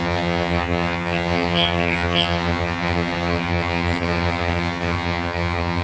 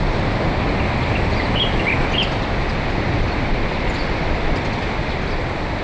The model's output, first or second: first